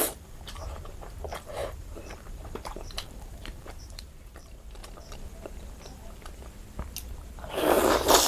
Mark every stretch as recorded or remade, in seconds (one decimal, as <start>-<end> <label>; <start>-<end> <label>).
0.0-4.8 remade; 4.8-7.6 recorded; 7.6-8.3 remade